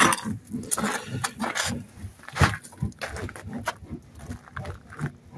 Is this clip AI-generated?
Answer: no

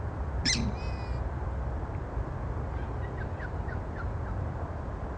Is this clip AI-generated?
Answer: no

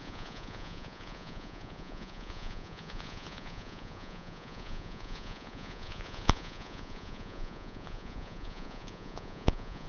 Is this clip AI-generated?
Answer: yes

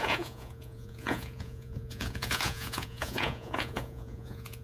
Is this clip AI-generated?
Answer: yes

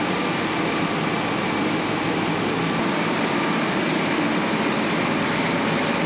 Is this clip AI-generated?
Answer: no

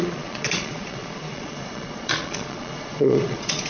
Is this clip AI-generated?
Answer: yes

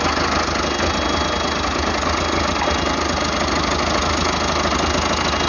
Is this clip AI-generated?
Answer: no